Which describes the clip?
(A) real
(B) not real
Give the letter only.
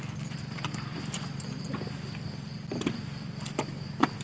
A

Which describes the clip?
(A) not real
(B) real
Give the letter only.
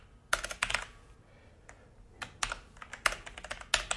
B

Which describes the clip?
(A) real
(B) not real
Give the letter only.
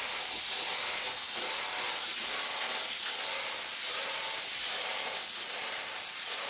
A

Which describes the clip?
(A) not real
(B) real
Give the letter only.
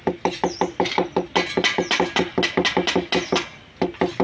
B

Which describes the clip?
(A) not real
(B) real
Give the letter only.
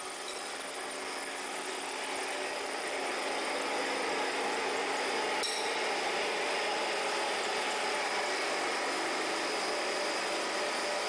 B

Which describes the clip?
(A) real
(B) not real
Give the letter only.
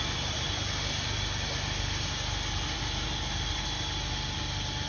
A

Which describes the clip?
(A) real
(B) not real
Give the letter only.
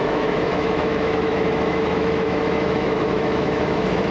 B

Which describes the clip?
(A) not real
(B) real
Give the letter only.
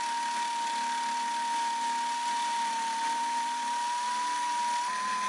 B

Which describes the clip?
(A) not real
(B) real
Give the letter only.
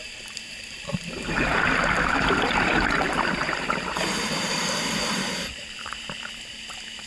A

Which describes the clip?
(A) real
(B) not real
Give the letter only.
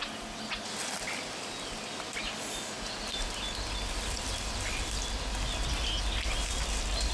A